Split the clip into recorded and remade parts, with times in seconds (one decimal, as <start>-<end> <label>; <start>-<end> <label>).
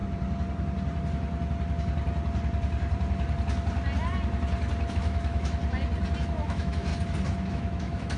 0.0-4.9 recorded; 4.9-5.6 remade; 5.6-6.2 recorded; 6.2-6.9 remade; 6.9-7.5 recorded; 7.5-8.2 remade